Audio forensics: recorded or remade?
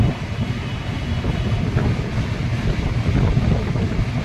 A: recorded